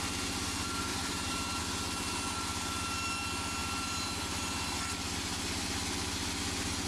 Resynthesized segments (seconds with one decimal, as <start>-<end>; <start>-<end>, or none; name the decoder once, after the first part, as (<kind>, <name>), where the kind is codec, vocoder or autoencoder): 0.9-1.6 (vocoder, BigVGAN v2); 3.6-4.8